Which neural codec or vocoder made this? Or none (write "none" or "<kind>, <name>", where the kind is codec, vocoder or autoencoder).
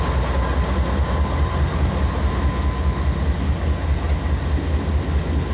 none